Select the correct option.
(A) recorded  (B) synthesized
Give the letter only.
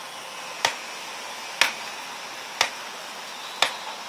A